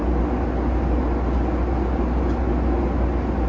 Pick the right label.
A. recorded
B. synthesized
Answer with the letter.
A